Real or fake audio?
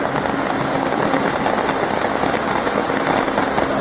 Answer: real